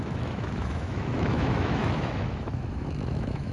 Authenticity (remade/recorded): remade